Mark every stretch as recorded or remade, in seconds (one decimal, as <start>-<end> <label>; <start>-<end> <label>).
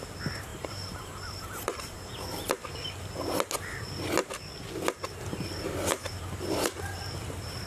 0.0-0.5 recorded; 0.5-2.1 remade; 2.1-7.7 recorded